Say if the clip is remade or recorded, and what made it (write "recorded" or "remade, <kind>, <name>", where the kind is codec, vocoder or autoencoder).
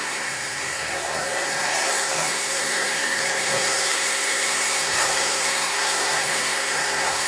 remade, codec, SNAC